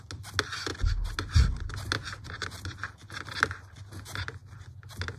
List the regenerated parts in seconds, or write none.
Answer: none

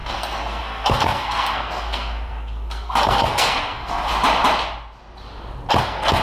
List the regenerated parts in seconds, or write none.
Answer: 0.0-4.1 (codec, SNAC); 5.8-6.2

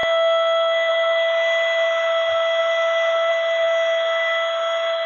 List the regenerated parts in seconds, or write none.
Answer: 0.0-0.9 (autoencoder, DAC-VAE)

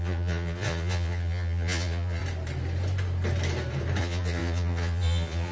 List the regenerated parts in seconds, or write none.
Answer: 0.0-2.2 (vocoder, Vocos); 4.0-5.5

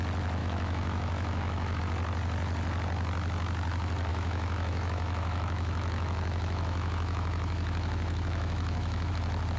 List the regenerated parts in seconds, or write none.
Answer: 0.4-1.8 (autoencoder, DAC-VAE); 4.1-9.1

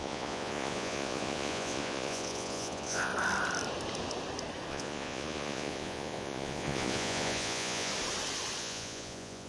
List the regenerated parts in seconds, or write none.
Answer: 0.0-3.1 (vocoder, Vocos); 4.7-7.9; 8.6-9.5